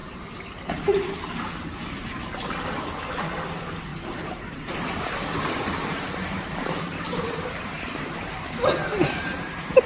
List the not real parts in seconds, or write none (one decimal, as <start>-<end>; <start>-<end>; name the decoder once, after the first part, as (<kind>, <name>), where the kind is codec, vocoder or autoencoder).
3.9-8.2 (vocoder, BigVGAN v2)